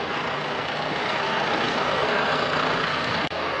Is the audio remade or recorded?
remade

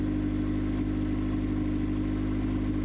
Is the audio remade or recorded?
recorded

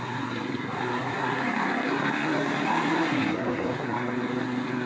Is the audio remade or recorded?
remade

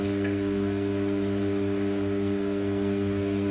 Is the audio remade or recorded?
remade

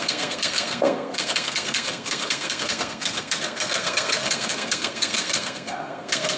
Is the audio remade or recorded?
remade